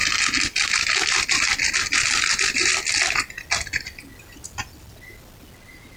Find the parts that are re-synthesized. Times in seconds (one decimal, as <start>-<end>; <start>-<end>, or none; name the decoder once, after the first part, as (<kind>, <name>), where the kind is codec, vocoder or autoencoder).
none